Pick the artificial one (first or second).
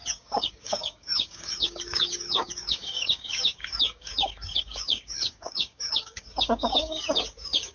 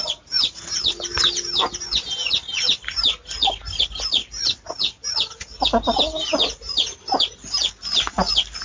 first